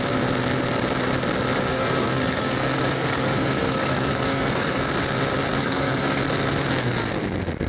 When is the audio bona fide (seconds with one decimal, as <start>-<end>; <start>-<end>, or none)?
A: 0.0-1.7; 4.8-5.6; 6.2-7.7

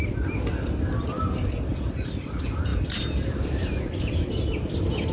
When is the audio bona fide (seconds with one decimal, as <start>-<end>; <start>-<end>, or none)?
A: 0.0-5.1

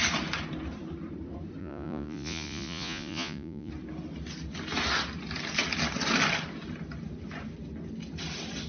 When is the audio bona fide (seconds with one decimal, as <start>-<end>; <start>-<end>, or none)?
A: 0.0-1.6; 3.7-8.7

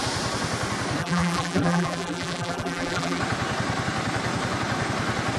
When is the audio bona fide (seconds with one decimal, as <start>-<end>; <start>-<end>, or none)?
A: 0.0-1.0; 3.2-5.4

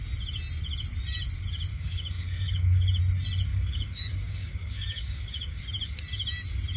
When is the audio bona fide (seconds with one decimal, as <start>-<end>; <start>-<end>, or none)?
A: 0.0-1.7; 3.0-3.5; 5.6-6.8